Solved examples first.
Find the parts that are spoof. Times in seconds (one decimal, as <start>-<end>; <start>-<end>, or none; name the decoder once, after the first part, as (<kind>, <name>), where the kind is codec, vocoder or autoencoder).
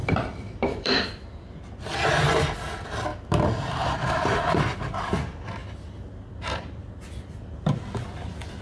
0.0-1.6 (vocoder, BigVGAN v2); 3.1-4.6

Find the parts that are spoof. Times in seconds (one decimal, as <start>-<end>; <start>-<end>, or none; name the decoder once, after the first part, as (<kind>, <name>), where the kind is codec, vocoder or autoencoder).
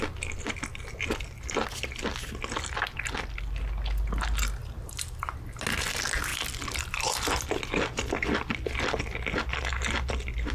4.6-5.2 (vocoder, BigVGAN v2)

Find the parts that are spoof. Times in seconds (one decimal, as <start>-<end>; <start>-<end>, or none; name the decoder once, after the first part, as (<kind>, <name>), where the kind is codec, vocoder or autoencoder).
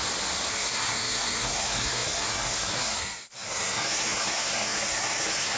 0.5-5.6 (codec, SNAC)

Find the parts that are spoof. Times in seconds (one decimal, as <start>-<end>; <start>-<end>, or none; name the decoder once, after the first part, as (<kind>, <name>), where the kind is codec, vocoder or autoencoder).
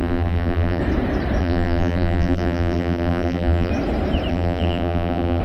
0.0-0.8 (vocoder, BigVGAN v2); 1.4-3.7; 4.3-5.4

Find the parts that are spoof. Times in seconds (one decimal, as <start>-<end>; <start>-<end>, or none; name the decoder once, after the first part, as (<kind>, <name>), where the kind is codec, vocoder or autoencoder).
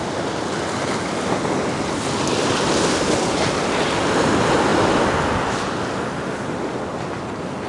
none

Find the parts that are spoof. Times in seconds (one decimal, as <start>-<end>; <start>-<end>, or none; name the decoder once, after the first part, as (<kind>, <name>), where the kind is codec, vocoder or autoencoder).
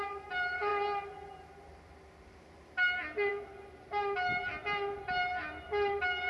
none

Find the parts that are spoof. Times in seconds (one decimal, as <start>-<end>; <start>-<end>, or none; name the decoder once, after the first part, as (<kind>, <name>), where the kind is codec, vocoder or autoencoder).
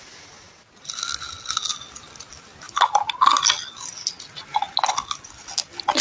none